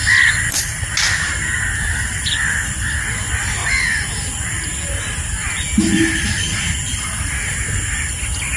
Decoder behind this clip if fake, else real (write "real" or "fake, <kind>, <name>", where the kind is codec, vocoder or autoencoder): real